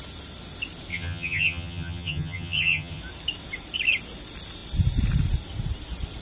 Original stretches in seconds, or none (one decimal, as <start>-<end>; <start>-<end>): 0.0-0.9; 3.0-6.2